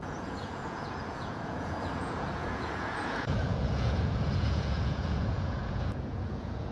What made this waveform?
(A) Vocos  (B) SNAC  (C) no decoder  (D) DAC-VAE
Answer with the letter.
A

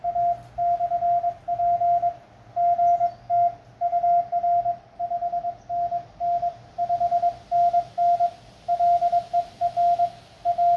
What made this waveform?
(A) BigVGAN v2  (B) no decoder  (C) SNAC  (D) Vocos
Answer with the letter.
B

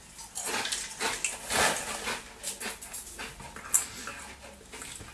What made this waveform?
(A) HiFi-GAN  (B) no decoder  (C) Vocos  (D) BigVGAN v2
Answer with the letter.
B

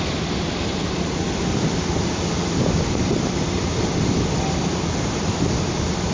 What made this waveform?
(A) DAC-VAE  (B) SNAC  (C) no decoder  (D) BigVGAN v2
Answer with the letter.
D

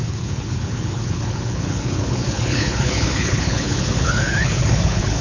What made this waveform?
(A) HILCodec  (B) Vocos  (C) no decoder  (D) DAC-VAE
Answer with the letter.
A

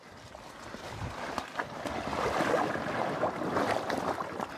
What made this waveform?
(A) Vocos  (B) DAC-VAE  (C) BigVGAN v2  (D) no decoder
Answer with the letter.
D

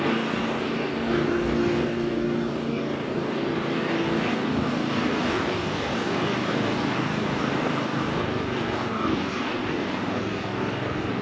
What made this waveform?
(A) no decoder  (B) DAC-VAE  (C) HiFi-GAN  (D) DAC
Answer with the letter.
D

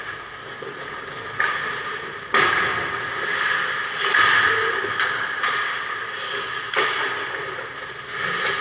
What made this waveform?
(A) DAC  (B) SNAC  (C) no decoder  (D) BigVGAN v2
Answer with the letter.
C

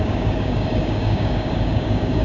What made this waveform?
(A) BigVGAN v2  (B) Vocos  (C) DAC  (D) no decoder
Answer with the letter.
C